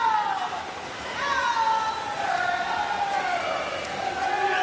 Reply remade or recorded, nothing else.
recorded